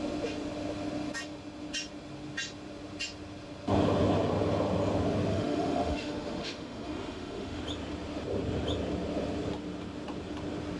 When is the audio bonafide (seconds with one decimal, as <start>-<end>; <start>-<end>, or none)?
0.0-5.3; 7.6-10.8